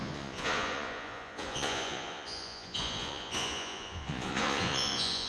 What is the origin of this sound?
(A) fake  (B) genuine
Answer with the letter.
A